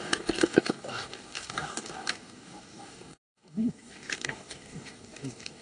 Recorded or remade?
remade